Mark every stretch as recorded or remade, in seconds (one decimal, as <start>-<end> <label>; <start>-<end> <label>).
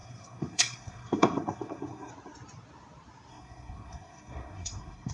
0.0-2.1 remade; 2.1-3.3 recorded; 3.3-5.1 remade